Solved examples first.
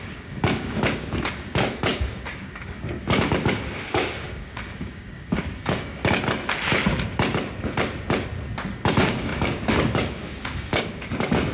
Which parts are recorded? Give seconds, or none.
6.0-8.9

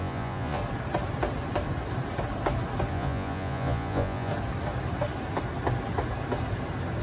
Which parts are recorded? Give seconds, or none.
0.6-2.9; 4.3-7.0